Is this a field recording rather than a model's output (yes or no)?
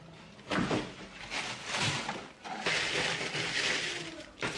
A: yes